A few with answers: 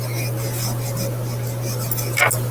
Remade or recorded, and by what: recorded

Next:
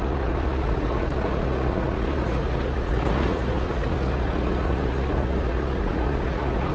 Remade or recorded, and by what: remade, vocoder, Vocos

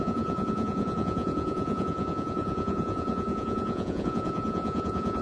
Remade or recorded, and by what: remade, vocoder, Vocos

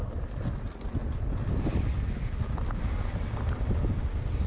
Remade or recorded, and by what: recorded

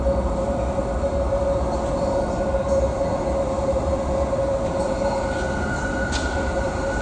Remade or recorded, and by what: recorded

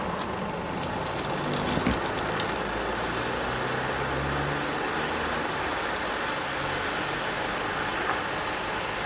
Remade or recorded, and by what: recorded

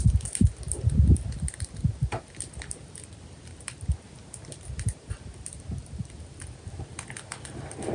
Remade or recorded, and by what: recorded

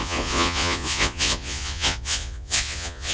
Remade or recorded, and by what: remade, vocoder, Vocos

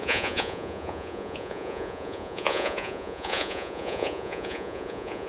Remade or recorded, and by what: remade, vocoder, Vocos